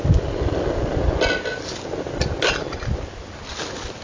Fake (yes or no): no